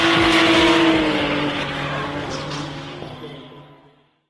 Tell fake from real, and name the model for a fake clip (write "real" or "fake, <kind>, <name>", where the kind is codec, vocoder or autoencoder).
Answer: real